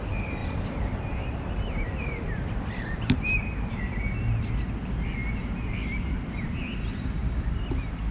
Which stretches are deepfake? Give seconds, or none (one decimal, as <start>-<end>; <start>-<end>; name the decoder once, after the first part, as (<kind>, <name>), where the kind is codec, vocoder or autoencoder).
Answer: 0.4-3.8 (vocoder, BigVGAN v2)